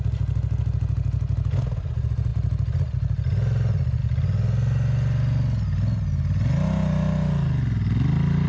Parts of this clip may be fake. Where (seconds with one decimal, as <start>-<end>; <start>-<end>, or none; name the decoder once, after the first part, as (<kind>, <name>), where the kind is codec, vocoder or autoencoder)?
none